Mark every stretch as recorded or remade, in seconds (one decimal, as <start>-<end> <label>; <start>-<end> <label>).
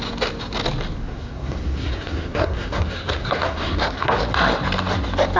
0.0-1.0 recorded; 1.0-4.2 remade; 4.2-5.4 recorded